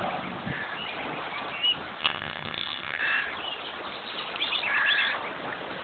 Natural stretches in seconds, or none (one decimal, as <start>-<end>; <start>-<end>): 0.0-2.0; 3.0-5.8